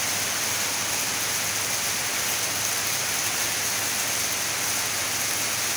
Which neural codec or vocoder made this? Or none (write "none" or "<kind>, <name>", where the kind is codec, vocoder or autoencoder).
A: none